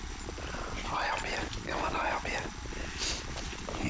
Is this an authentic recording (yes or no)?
yes